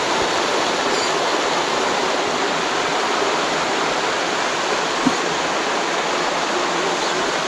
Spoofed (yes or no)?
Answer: no